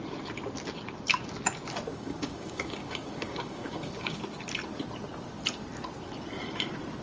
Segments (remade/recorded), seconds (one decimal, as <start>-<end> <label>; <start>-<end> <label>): 0.0-1.9 recorded; 1.9-4.2 remade; 4.2-7.0 recorded